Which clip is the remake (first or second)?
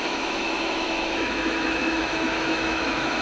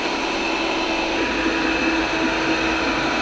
first